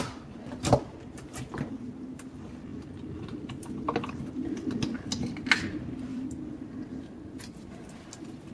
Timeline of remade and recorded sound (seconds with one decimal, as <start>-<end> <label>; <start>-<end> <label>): 0.0-8.5 recorded